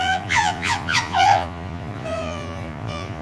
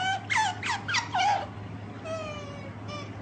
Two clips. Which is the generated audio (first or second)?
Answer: first